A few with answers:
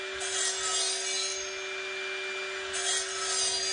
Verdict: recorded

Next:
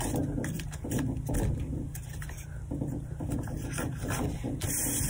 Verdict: remade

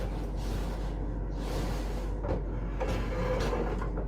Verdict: recorded